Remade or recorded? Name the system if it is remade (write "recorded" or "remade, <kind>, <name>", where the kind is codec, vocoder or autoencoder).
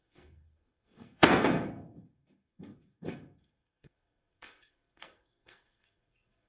remade, codec, SNAC